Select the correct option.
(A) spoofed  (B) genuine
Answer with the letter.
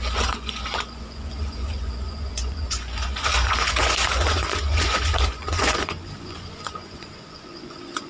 A